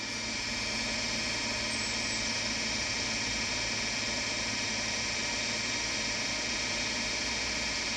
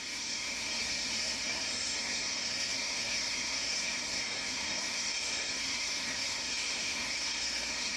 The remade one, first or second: second